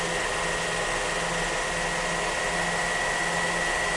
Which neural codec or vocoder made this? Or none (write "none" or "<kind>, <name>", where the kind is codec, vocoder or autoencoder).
none